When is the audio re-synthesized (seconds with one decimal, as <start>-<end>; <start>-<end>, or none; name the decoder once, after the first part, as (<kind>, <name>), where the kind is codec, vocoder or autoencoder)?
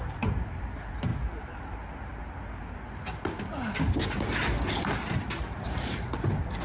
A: 0.0-1.1 (vocoder, BigVGAN v2); 5.1-6.6